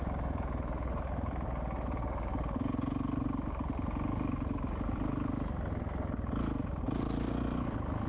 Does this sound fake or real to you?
real